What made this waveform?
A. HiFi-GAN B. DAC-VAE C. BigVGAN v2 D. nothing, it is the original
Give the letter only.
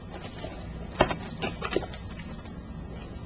D